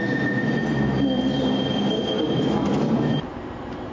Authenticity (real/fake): real